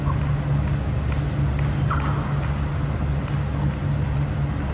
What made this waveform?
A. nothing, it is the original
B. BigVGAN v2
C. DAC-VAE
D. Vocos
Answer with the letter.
A